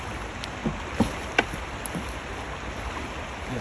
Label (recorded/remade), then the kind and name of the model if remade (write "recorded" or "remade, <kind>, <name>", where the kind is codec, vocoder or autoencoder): recorded